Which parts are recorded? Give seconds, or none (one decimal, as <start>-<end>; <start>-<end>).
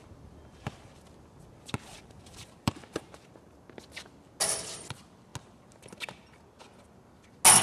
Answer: 0.0-1.9; 3.0-7.6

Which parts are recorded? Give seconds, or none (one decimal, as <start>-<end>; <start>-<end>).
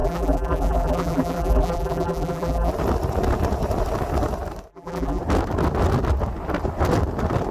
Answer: 2.7-4.7; 5.2-7.5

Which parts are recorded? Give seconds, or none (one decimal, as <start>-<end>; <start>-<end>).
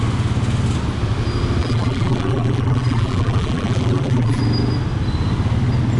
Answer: 0.0-1.6; 4.4-6.0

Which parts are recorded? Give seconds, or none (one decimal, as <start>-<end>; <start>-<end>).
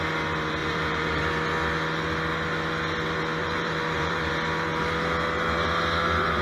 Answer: 0.0-0.6; 1.2-3.4; 4.3-6.4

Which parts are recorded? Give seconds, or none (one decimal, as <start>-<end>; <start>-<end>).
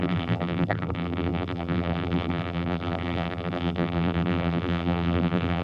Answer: none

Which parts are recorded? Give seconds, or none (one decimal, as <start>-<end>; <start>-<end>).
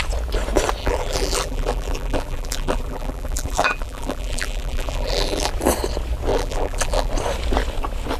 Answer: 0.0-0.8; 5.5-6.3; 7.1-8.2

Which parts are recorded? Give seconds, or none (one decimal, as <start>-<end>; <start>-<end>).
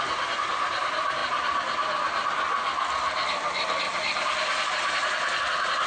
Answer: 0.0-5.9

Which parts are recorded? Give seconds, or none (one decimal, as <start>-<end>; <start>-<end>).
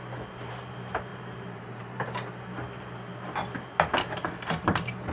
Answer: 0.0-1.1; 1.9-5.1